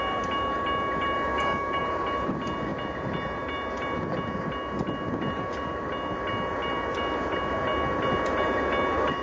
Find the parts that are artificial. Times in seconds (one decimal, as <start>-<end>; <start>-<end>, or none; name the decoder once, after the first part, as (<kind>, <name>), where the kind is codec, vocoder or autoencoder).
1.3-1.8 (codec, DAC)